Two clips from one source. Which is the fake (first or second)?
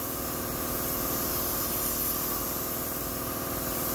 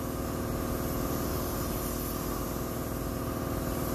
first